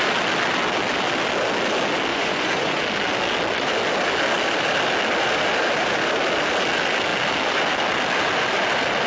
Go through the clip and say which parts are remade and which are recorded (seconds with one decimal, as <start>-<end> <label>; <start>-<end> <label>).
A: 0.0-2.1 recorded; 2.1-2.8 remade; 2.8-9.1 recorded